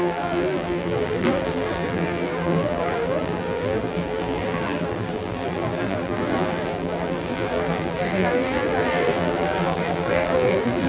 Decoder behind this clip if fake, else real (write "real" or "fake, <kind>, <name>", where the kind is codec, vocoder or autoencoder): fake, vocoder, BigVGAN v2